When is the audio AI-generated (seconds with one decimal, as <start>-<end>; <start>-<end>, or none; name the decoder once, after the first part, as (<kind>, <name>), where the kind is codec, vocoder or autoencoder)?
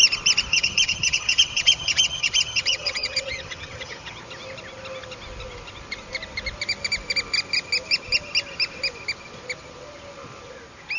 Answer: 0.5-4.2 (vocoder, HiFi-GAN)